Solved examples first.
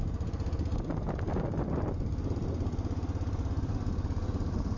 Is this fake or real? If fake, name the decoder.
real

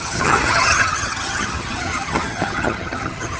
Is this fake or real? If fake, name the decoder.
fake, vocoder, HiFi-GAN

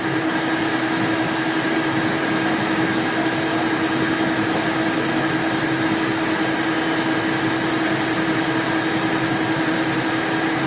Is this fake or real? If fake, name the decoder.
real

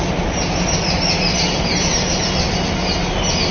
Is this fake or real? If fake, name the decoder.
real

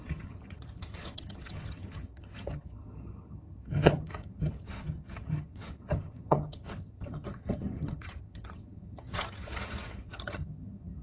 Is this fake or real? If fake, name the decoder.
fake, vocoder, HiFi-GAN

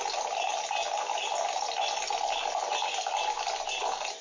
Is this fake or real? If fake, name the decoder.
real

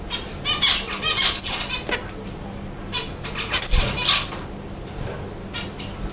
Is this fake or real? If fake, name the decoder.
real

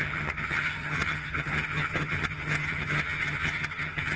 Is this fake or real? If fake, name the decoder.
fake, vocoder, HiFi-GAN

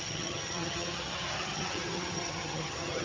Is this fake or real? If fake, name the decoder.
fake, vocoder, HiFi-GAN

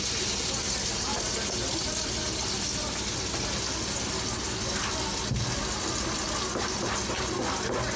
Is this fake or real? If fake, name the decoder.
real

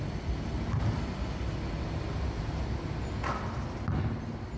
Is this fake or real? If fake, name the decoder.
real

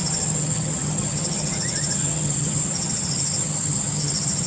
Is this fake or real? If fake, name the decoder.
fake, vocoder, HiFi-GAN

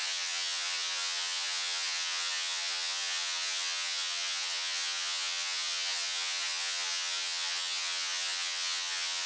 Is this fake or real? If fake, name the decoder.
fake, vocoder, HiFi-GAN